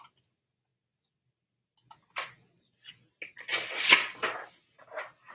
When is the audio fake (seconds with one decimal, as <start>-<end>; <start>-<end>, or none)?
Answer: none

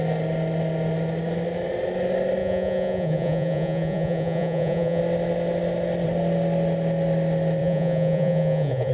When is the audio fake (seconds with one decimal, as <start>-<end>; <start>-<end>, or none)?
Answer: 2.4-5.0; 7.6-8.9

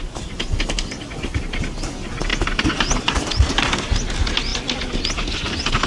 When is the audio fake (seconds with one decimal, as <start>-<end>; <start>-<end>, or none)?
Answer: none

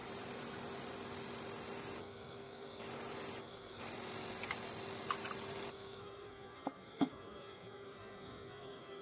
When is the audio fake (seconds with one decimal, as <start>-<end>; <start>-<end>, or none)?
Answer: 2.0-2.8; 3.4-3.8; 5.7-9.0